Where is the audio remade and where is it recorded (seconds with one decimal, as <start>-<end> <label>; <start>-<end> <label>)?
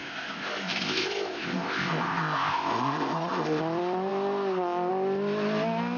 0.0-3.6 remade; 3.6-6.0 recorded